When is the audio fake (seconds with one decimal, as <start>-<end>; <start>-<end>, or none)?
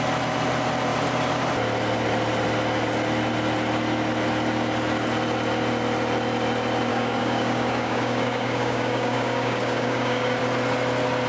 6.9-10.4